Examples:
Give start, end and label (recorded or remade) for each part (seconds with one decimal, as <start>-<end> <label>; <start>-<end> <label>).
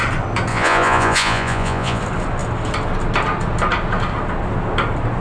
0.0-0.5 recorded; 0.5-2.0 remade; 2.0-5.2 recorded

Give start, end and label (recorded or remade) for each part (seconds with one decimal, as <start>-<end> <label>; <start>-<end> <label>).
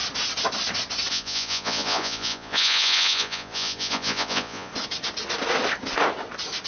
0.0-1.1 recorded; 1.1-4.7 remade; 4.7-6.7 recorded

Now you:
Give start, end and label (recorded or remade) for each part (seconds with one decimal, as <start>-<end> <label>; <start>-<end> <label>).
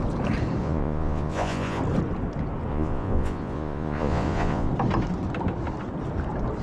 0.0-0.6 recorded; 0.6-1.8 remade; 1.8-2.7 recorded; 2.7-4.7 remade; 4.7-6.6 recorded